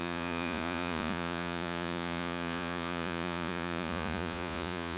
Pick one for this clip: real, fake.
fake